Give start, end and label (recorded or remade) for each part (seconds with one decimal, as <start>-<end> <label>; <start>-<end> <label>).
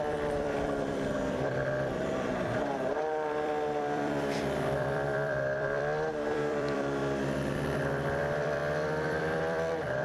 0.0-10.0 remade